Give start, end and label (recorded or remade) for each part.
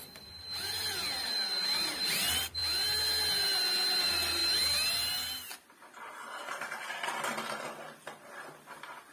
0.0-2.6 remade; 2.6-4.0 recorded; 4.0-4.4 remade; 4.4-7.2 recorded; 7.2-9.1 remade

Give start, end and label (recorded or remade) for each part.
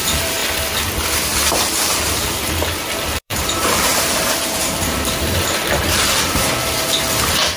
0.0-0.4 remade; 0.4-1.5 recorded; 1.5-7.6 remade